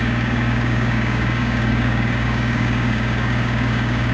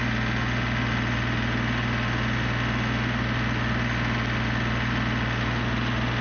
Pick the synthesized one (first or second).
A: first